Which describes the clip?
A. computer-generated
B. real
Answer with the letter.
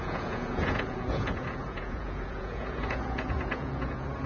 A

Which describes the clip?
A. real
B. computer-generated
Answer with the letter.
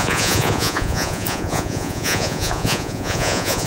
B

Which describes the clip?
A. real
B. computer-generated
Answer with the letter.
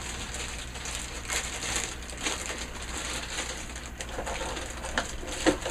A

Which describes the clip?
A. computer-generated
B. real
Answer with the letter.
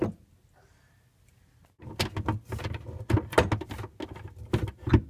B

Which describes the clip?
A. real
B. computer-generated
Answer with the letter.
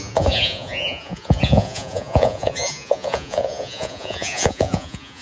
B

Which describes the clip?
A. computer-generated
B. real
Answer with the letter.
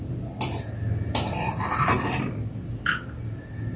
B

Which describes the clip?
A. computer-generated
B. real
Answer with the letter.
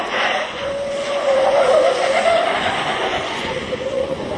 A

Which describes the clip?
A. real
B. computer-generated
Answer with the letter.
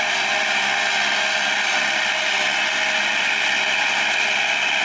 A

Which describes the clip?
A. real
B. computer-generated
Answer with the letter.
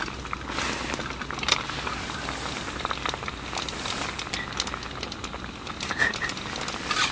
A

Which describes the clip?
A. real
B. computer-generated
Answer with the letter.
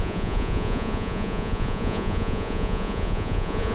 B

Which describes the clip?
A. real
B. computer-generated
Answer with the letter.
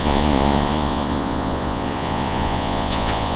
B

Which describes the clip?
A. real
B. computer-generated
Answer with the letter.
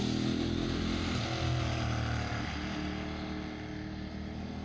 A